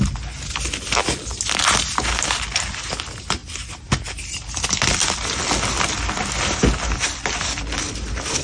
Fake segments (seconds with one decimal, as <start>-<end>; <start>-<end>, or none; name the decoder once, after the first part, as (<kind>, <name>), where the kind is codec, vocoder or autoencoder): none

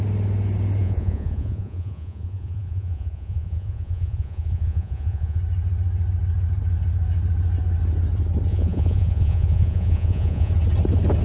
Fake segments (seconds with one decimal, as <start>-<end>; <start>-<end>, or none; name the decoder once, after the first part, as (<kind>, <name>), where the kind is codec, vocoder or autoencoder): 0.8-5.4 (vocoder, Vocos); 8.5-10.5